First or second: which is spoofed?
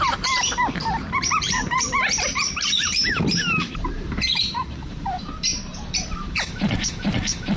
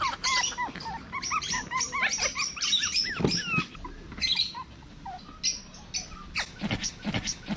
first